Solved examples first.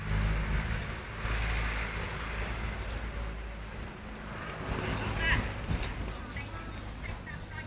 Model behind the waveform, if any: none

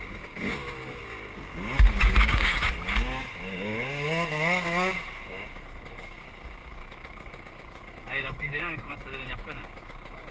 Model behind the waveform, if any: codec, DAC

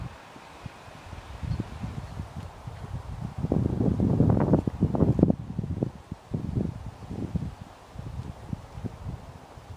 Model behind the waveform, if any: none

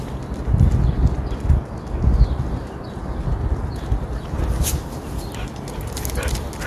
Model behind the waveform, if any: none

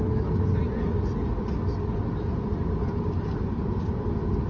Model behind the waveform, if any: none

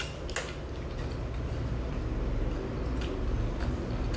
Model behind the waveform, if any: none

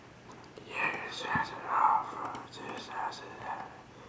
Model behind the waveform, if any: none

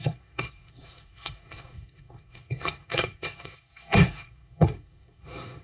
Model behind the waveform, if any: codec, SNAC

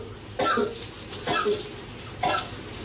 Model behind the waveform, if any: none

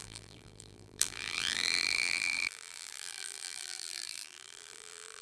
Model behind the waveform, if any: vocoder, BigVGAN v2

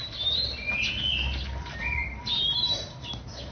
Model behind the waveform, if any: vocoder, BigVGAN v2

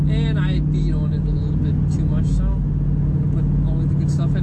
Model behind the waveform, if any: none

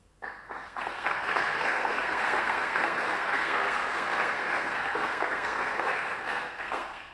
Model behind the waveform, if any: codec, SNAC